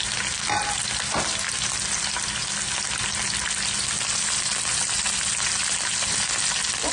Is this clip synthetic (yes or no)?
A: no